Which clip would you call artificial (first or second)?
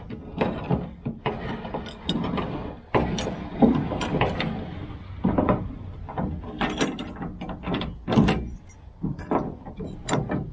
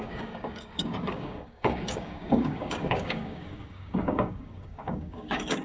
second